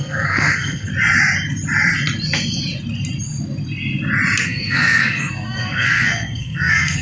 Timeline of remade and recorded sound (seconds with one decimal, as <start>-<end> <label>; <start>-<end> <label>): 0.0-0.9 remade; 0.9-4.4 recorded; 4.4-7.0 remade